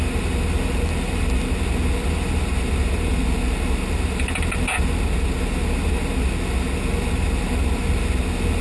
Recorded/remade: recorded